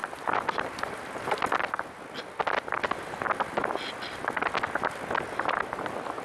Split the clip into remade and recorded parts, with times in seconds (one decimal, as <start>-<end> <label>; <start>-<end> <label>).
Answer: 0.0-6.2 recorded